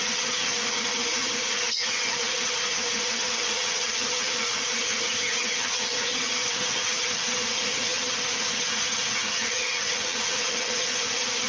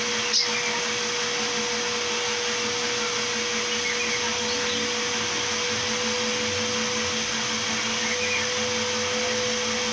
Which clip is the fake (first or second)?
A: first